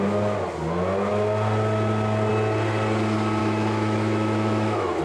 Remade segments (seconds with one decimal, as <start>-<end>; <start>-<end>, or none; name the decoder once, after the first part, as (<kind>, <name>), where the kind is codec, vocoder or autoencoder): 3.4-5.0 (autoencoder, DAC-VAE)